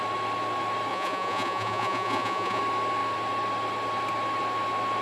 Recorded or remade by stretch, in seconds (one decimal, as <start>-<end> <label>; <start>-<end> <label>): 0.0-0.9 recorded; 0.9-2.6 remade; 2.6-5.0 recorded